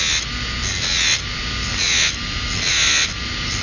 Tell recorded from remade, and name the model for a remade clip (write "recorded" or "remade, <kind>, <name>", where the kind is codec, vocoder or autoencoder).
recorded